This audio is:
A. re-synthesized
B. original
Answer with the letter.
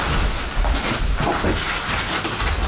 B